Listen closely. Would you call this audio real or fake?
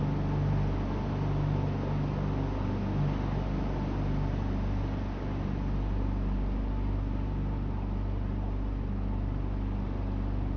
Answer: real